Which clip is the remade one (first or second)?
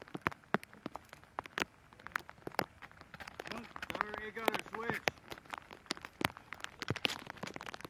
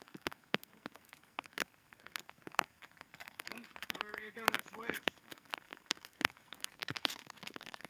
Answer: second